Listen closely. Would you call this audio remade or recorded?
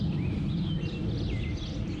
recorded